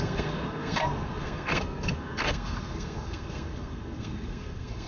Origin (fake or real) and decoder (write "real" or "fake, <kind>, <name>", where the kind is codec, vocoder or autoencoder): fake, codec, SNAC